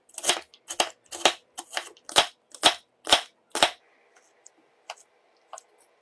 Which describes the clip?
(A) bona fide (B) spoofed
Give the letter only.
A